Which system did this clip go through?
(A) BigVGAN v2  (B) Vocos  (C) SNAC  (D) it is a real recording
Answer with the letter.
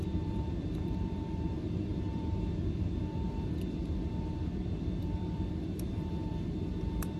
A